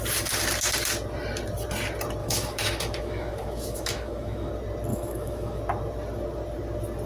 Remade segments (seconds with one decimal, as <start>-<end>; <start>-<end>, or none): 2.2-4.5; 4.9-5.6